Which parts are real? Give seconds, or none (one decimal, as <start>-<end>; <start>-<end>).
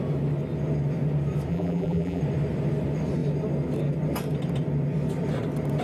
0.0-1.5; 2.2-5.8